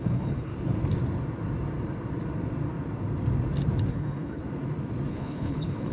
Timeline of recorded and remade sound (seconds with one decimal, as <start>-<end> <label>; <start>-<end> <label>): 0.0-0.5 remade; 0.5-3.9 recorded; 3.9-4.4 remade; 4.4-5.1 recorded; 5.1-5.9 remade